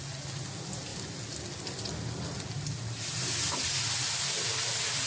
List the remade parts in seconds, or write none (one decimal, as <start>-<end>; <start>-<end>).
none